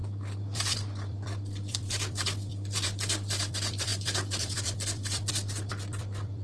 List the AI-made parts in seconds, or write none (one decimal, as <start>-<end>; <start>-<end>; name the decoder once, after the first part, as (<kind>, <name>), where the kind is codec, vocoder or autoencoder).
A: 0.0-2.5 (vocoder, BigVGAN v2); 3.5-6.4